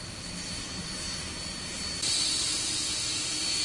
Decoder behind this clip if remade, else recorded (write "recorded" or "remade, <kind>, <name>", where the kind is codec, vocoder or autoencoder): recorded